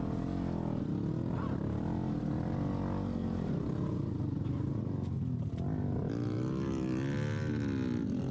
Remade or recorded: recorded